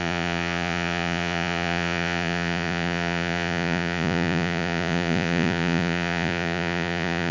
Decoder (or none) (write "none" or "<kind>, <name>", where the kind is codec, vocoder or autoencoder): vocoder, Vocos